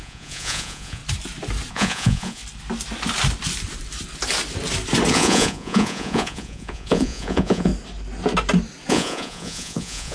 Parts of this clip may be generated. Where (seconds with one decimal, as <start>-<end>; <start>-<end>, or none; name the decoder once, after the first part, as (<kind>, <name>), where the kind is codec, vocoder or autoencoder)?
0.0-1.0 (vocoder, Vocos); 1.7-2.4; 5.1-7.7; 8.9-10.1